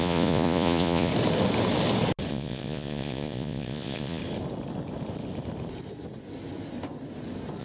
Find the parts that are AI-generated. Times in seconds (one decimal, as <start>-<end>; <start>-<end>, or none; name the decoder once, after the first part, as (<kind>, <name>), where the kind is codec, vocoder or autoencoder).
0.0-1.1 (vocoder, Vocos); 2.3-4.2

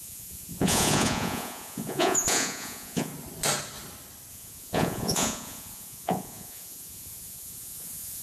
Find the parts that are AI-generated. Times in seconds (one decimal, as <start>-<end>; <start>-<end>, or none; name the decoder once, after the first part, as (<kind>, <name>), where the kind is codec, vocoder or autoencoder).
0.0-3.1 (vocoder, Vocos); 4.3-8.2

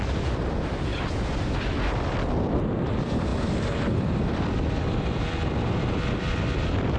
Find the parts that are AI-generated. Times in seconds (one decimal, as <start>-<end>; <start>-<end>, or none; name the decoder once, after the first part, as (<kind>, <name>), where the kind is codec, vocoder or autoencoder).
0.0-0.9 (vocoder, BigVGAN v2); 2.4-7.0

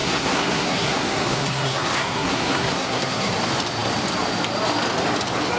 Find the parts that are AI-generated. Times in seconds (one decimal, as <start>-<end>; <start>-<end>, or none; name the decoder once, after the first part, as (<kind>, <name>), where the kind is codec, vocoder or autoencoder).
0.0-3.4 (codec, SNAC)

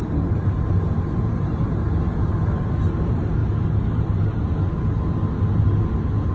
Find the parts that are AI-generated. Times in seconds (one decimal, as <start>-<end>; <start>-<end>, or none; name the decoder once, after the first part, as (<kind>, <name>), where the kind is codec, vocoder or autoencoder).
none